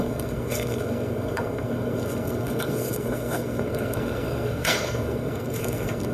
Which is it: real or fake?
fake